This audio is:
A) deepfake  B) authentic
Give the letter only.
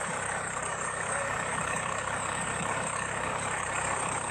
A